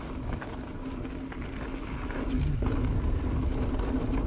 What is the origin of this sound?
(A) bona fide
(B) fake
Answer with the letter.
A